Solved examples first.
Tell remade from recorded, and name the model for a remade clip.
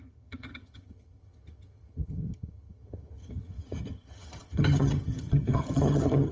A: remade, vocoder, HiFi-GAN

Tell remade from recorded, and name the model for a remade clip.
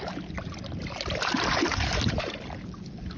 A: recorded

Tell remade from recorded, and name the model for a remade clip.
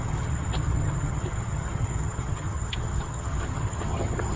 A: remade, vocoder, HiFi-GAN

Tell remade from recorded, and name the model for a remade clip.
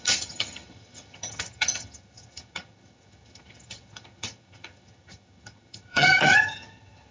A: remade, vocoder, HiFi-GAN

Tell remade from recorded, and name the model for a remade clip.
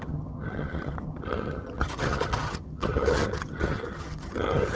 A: remade, vocoder, HiFi-GAN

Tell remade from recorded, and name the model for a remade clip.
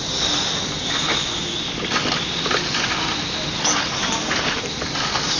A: recorded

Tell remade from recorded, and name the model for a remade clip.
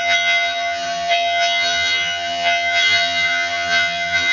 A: remade, vocoder, HiFi-GAN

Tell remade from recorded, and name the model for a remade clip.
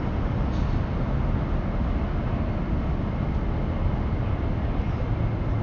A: recorded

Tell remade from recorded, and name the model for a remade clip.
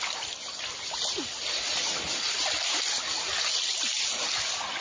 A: recorded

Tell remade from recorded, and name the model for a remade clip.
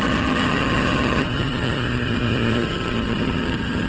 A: remade, vocoder, HiFi-GAN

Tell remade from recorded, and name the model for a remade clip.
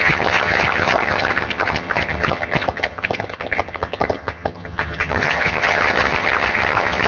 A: remade, vocoder, HiFi-GAN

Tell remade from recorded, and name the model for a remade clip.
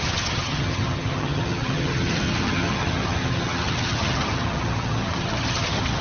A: remade, vocoder, HiFi-GAN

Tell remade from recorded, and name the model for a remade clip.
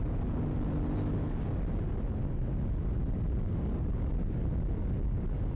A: recorded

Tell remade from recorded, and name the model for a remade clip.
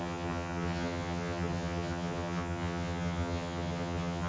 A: remade, vocoder, HiFi-GAN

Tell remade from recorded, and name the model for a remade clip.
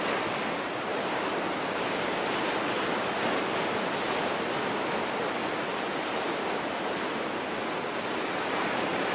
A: recorded